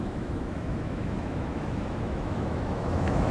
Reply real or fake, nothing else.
fake